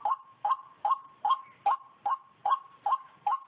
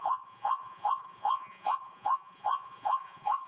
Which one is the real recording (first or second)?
first